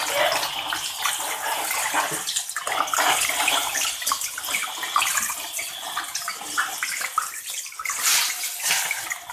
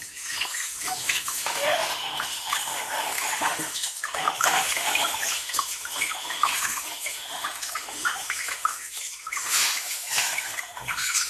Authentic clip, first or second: first